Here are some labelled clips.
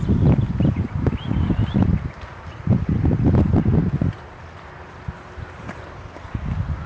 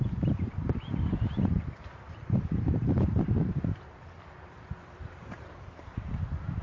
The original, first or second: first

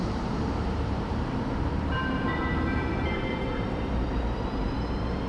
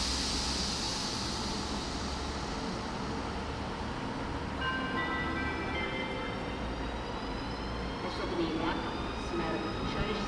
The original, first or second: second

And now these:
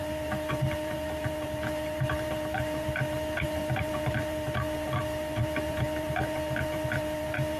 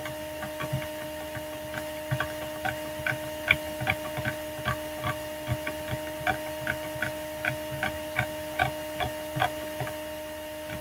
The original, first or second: second